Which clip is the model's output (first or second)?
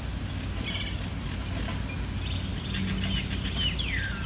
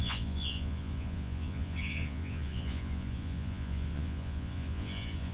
second